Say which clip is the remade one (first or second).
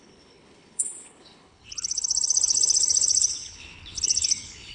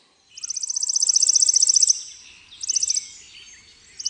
first